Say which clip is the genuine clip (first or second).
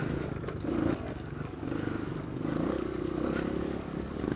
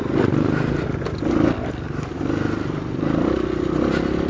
second